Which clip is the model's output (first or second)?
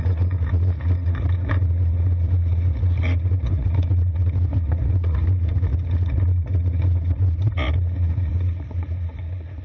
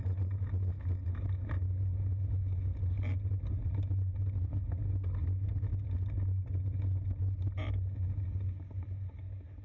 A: first